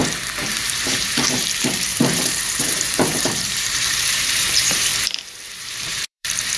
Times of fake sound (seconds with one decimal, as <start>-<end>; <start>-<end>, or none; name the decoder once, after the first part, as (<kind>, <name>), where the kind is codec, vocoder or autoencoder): 0.8-4.9 (vocoder, BigVGAN v2); 5.6-6.6